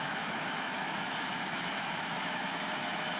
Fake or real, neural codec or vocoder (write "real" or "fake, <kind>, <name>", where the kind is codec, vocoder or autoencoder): fake, autoencoder, DAC-VAE